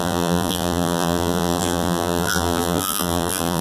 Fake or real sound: fake